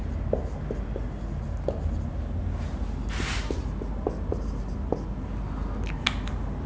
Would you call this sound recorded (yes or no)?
yes